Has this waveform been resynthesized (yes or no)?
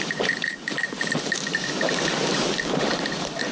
yes